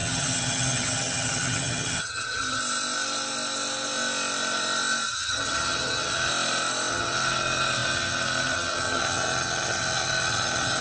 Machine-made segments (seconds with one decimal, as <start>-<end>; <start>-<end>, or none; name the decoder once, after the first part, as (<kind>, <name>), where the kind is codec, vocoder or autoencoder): 0.0-2.6 (vocoder, HiFi-GAN); 5.1-6.3; 6.9-10.8